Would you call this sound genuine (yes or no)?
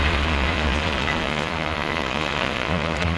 no